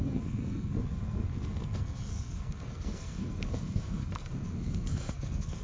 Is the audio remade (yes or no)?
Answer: yes